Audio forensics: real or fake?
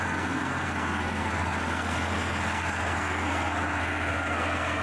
fake